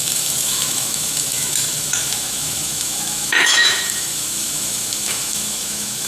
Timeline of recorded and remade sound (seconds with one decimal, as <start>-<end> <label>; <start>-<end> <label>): 0.0-6.1 remade